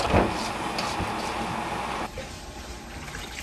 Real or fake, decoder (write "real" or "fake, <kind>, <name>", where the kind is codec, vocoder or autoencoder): real